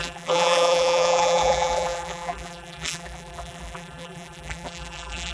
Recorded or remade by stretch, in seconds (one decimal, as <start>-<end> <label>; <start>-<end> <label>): 0.0-5.3 remade